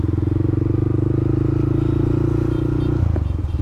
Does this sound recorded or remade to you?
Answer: recorded